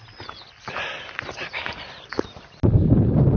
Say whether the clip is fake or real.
real